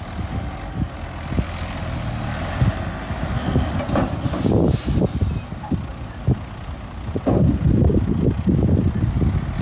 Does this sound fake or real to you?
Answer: real